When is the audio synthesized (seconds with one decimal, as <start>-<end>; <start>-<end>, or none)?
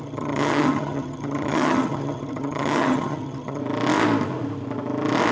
0.0-3.6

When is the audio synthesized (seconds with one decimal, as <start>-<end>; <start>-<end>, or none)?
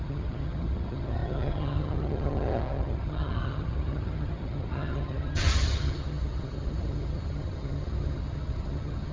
0.0-9.1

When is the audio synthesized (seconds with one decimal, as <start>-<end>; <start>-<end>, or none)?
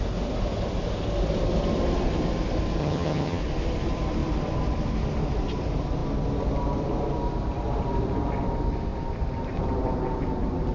2.8-3.4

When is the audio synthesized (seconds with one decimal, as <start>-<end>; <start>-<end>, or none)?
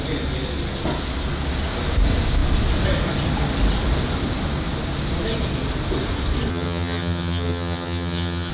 6.5-8.5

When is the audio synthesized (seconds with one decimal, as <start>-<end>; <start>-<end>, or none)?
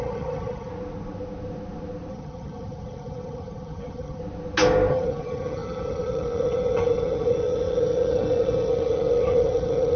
0.0-0.7; 2.1-4.2; 4.9-10.0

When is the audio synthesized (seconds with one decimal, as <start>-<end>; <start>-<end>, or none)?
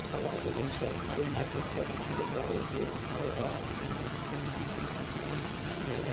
0.0-6.1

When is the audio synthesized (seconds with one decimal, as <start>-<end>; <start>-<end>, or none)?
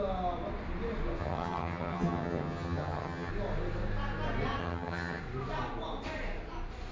1.2-3.3; 4.6-5.2